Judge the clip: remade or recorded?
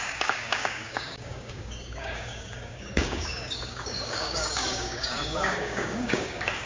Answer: remade